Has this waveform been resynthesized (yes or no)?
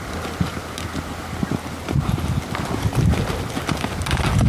no